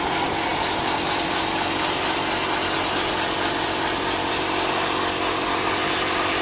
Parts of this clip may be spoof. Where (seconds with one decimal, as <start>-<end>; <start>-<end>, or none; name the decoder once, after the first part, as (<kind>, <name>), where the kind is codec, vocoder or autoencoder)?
none